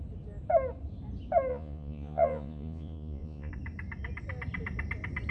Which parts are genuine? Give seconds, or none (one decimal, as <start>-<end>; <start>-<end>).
0.0-1.5; 3.5-5.3